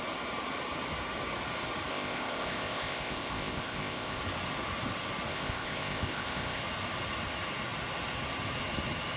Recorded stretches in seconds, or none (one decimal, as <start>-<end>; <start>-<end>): 0.0-1.9; 4.2-5.3; 6.6-9.2